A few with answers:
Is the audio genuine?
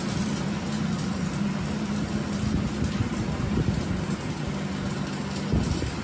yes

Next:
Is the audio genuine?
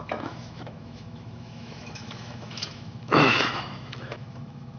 no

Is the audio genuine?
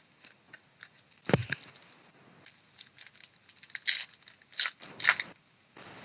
yes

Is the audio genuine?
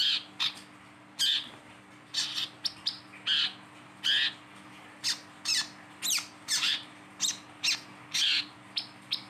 yes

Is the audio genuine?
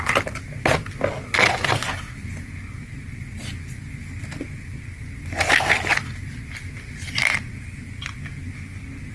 yes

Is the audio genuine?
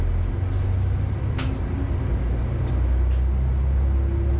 yes